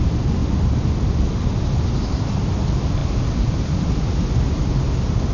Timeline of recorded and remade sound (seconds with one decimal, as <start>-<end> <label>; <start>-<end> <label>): 0.0-5.3 recorded